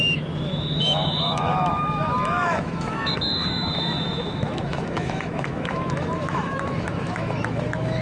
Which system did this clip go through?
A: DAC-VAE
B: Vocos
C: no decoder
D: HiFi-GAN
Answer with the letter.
A